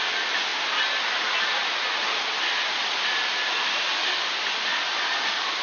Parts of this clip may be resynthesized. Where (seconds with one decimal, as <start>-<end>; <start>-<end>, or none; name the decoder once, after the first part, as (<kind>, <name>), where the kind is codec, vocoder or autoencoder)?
none